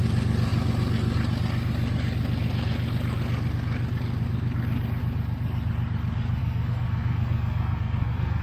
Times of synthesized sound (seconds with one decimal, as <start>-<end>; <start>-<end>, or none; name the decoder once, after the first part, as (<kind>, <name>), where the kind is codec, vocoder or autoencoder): 6.4-8.4 (codec, SNAC)